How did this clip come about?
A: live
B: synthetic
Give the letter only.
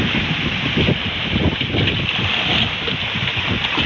A